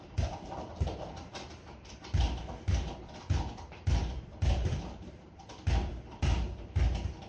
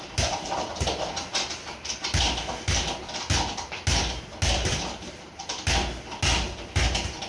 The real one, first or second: second